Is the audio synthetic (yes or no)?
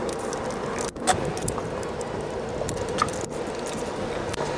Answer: no